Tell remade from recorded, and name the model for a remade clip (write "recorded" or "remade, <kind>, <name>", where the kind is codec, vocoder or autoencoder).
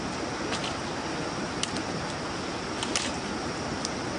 recorded